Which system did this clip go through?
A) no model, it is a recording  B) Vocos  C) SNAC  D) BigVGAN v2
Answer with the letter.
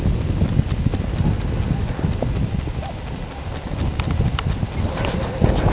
A